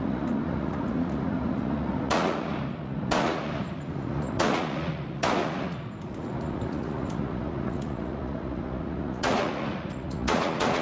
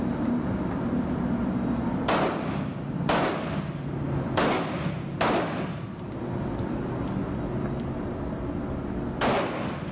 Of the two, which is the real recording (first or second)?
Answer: second